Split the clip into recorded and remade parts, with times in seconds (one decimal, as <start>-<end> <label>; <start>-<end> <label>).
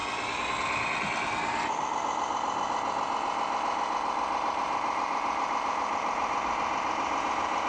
0.0-7.7 recorded